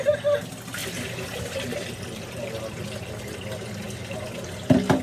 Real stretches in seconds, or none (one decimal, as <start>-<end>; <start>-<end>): 0.0-5.0